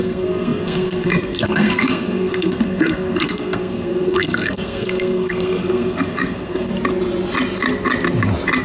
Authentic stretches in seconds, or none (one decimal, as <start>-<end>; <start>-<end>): 6.7-8.6